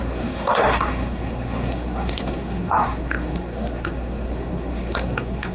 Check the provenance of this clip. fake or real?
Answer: fake